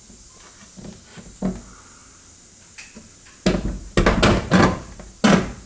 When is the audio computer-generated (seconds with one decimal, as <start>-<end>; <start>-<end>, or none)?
none

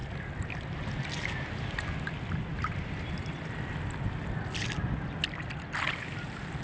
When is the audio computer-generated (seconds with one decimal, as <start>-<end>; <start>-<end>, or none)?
none